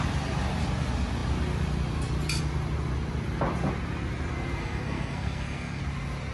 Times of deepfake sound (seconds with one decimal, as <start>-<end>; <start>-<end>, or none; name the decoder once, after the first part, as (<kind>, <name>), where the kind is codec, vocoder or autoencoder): 4.6-5.8 (codec, SNAC)